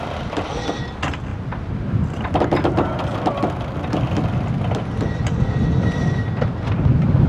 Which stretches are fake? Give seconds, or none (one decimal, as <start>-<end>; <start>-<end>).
none